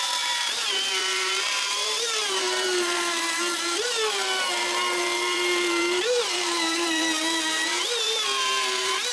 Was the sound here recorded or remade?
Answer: remade